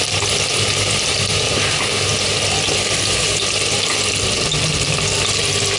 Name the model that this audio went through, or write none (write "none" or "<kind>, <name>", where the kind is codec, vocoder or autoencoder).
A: none